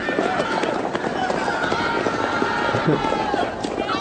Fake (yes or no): no